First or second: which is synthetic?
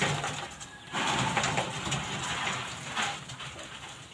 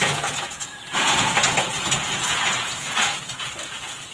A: second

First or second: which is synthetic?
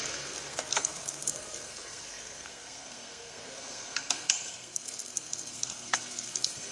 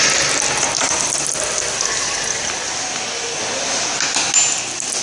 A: first